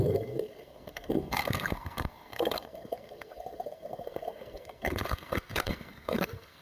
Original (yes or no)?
no